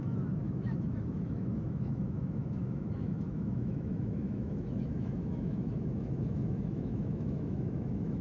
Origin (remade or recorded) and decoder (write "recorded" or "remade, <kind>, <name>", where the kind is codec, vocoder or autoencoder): remade, autoencoder, DAC-VAE